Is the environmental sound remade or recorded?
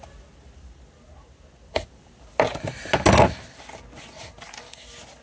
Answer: recorded